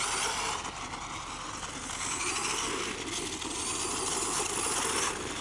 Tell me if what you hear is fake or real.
real